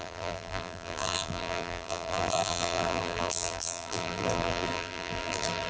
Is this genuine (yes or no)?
no